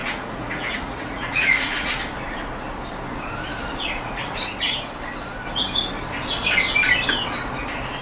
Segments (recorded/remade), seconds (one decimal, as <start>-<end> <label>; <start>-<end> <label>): 0.0-2.0 remade; 2.0-3.7 recorded; 3.7-4.3 remade; 4.3-8.0 recorded